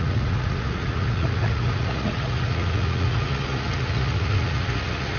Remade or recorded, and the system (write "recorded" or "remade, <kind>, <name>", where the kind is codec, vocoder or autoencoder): remade, vocoder, Vocos